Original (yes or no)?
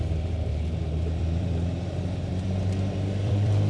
no